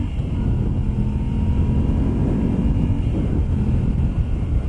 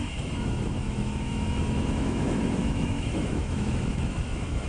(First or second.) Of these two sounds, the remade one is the second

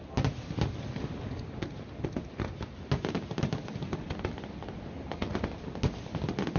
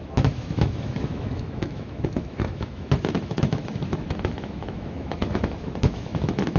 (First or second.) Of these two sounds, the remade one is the second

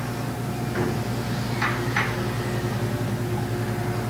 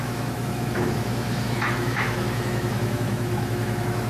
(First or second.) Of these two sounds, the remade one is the second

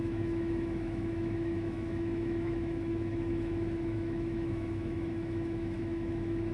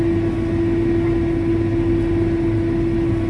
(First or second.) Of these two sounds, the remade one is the first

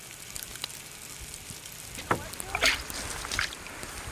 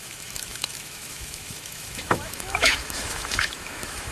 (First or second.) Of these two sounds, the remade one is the second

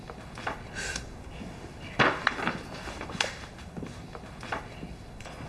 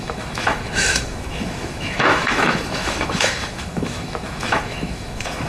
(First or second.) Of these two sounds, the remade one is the second